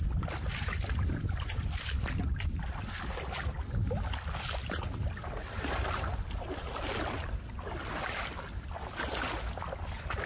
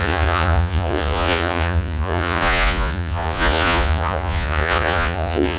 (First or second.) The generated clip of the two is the second